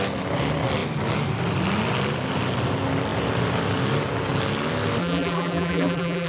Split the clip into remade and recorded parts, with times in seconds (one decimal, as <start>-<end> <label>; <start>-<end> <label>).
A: 0.0-5.0 recorded; 5.0-6.3 remade